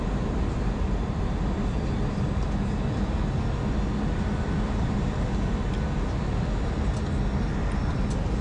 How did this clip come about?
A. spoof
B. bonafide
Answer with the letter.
B